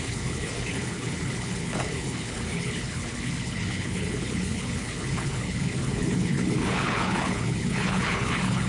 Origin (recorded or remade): remade